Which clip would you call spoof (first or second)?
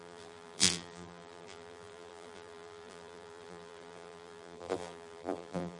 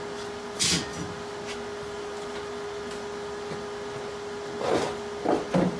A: first